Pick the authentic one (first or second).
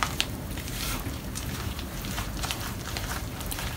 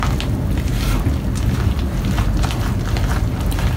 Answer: second